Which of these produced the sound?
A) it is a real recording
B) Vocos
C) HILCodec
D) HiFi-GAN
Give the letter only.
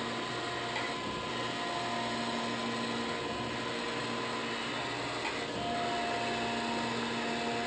A